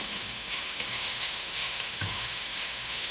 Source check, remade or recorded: remade